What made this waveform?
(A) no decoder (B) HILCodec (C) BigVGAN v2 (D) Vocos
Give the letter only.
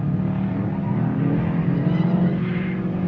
A